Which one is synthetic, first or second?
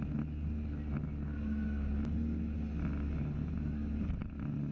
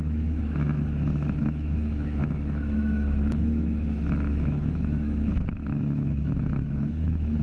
second